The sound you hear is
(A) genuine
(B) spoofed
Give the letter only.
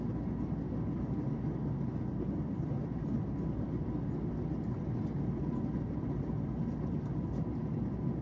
A